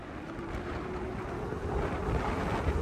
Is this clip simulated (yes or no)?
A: no